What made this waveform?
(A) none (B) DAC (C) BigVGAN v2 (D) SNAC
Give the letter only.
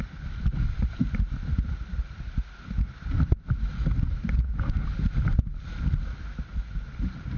A